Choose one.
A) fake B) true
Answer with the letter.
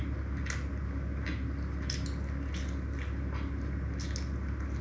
B